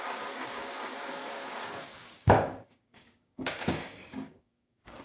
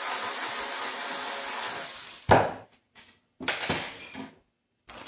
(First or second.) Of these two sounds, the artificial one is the first